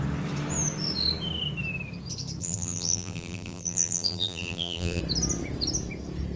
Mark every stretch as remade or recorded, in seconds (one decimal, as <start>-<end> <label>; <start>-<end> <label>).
0.0-2.4 recorded; 2.4-5.0 remade; 5.0-6.4 recorded